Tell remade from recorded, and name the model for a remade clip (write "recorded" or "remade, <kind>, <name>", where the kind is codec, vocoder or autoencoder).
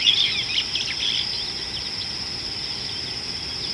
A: recorded